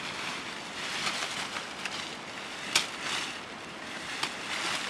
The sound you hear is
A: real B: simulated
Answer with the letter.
A